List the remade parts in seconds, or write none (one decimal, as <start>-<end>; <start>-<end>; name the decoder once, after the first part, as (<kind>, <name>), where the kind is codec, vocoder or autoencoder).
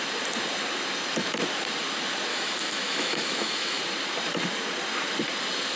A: 2.3-3.8 (autoencoder, DAC-VAE)